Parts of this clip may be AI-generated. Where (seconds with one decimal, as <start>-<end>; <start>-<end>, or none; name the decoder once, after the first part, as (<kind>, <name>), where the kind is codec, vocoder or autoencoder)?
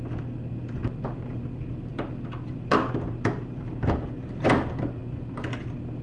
none